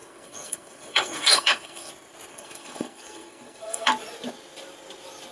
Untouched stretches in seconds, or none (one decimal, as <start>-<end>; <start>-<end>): 1.9-2.3; 3.9-5.3